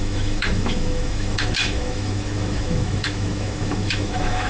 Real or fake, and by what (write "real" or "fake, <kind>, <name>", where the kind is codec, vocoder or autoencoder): fake, autoencoder, DAC-VAE